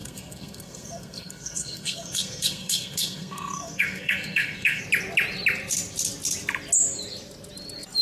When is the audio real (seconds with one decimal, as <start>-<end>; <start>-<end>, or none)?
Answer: 4.8-8.0